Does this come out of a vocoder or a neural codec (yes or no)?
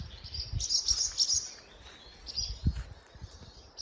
no